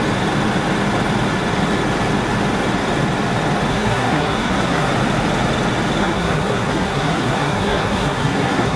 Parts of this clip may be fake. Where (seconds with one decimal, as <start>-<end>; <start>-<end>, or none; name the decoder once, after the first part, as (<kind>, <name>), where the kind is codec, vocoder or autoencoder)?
3.7-4.9 (codec, SNAC); 6.0-8.8